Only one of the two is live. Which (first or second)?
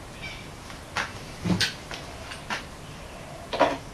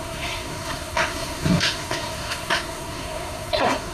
first